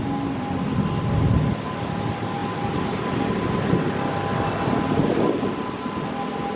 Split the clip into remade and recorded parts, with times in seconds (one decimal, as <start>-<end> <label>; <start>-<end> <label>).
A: 0.0-6.6 recorded